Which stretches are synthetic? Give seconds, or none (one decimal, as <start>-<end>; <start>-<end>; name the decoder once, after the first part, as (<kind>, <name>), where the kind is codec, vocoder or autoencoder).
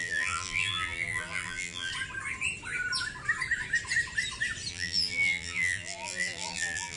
0.0-1.9 (vocoder, BigVGAN v2); 4.7-7.0